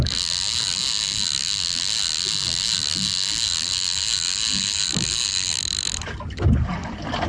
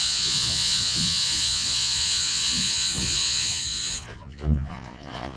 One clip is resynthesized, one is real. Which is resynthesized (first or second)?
second